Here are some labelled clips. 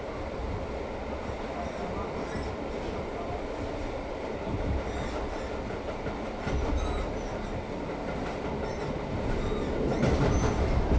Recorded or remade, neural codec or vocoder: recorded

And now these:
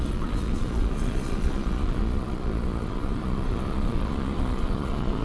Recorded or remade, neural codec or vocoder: remade, vocoder, Vocos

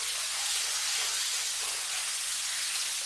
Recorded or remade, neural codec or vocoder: remade, vocoder, Vocos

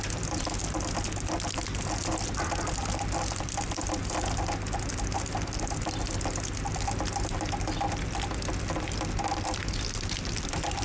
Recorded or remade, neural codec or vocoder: recorded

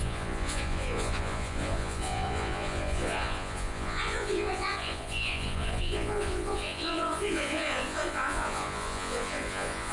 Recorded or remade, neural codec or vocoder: remade, vocoder, Vocos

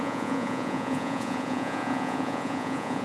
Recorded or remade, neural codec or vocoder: remade, vocoder, Vocos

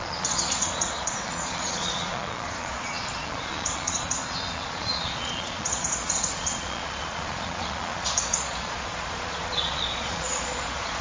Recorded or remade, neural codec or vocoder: remade, vocoder, Vocos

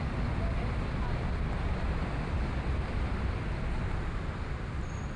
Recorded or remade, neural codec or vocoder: recorded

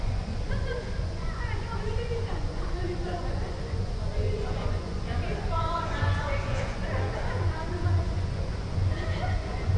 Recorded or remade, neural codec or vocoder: remade, vocoder, Vocos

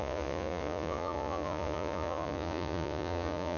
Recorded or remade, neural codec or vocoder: remade, vocoder, Vocos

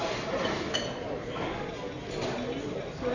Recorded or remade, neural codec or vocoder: recorded